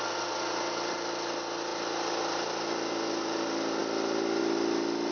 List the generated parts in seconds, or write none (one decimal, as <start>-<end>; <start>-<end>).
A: none